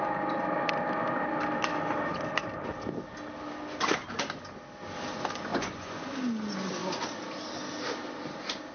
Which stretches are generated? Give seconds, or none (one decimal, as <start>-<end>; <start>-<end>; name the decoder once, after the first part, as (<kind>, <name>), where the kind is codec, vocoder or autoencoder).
5.5-6.1 (vocoder, Vocos)